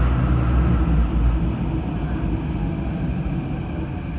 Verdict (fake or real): real